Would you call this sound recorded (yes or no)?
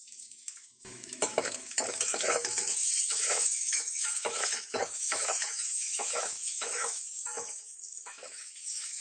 no